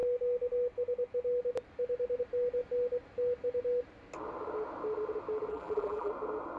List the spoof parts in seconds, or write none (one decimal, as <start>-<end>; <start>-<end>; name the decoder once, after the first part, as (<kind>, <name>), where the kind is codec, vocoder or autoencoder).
5.5-6.1 (vocoder, BigVGAN v2)